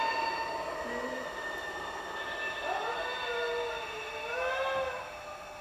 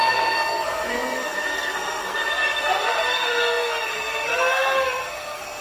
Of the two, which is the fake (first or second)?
second